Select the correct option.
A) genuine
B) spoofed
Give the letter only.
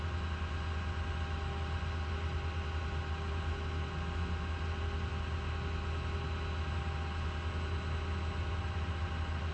A